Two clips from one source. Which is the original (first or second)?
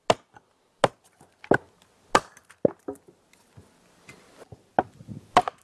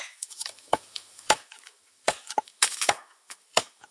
first